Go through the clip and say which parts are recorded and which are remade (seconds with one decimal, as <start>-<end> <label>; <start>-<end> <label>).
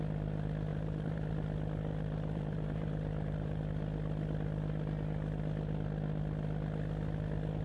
0.0-0.7 recorded; 0.7-1.3 remade; 1.3-1.9 recorded; 1.9-3.6 remade; 3.6-7.6 recorded